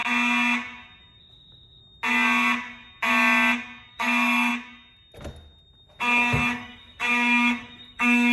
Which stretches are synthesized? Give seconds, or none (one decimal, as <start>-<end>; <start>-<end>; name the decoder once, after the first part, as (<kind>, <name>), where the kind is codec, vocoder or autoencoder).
1.2-1.8 (autoencoder, DAC-VAE); 3.9-4.5; 6.0-8.3